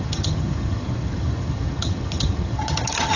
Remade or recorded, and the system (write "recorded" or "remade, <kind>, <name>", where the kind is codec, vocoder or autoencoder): remade, vocoder, HiFi-GAN